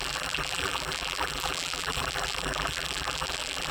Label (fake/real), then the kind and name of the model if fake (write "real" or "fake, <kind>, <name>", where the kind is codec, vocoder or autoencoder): fake, vocoder, BigVGAN v2